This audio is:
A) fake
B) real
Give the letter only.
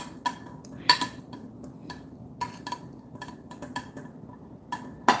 B